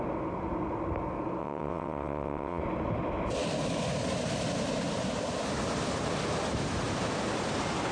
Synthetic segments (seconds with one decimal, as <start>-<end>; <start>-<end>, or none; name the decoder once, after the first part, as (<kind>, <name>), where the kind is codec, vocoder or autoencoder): 1.4-2.6 (vocoder, WaveNeXt)